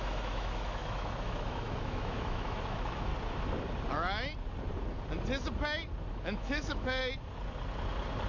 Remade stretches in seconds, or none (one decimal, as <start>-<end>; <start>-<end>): 0.0-3.1; 6.1-7.0